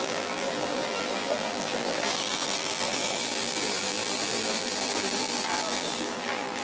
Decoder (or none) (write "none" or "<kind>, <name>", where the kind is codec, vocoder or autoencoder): vocoder, BigVGAN v2